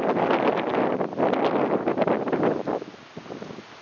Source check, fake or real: real